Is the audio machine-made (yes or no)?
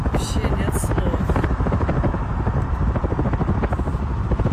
no